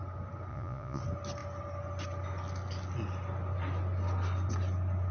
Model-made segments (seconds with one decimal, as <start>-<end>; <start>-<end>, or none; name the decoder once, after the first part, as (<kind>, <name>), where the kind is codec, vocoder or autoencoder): 0.5-1.0 (vocoder, Vocos)